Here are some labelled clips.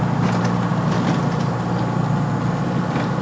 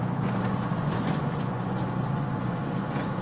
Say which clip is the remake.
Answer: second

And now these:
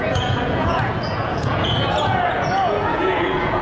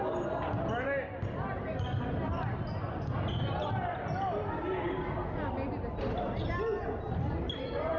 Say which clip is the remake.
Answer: first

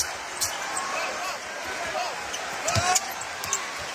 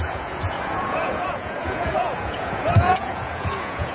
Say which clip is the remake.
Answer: second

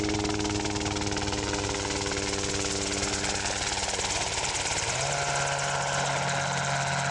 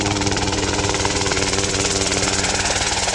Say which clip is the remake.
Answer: second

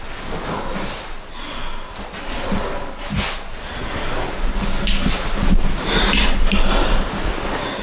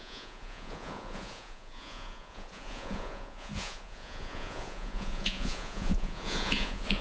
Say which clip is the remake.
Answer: second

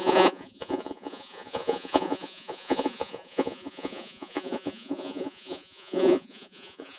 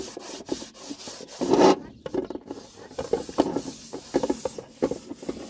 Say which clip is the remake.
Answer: first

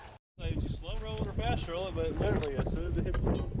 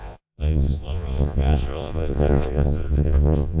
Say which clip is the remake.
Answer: second